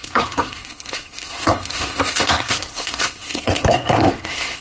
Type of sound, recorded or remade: remade